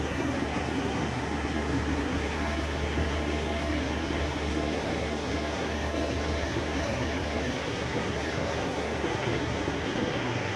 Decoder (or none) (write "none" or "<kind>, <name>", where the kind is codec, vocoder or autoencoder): codec, SNAC